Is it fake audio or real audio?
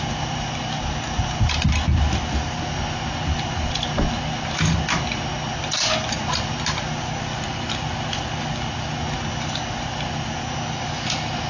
real